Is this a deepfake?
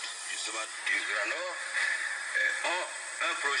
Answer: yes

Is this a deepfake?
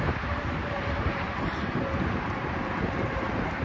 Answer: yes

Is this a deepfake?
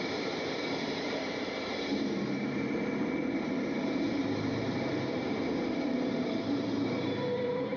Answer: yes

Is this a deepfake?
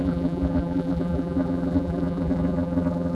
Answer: yes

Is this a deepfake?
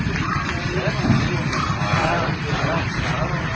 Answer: yes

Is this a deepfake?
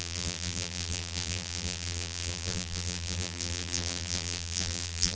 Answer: yes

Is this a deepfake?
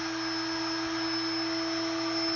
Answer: no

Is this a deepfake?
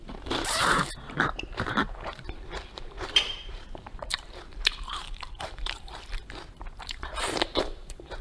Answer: yes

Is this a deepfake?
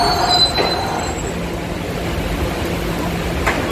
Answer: no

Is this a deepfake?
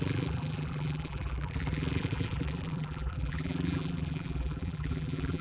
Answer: yes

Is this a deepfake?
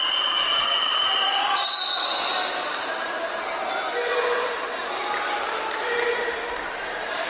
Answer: yes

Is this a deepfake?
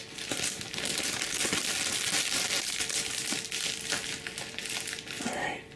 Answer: no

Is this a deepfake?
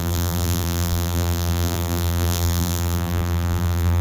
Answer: yes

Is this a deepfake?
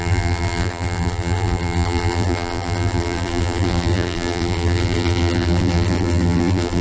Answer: yes